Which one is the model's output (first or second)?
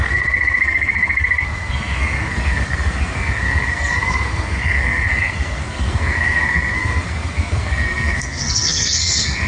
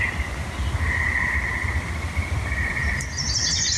first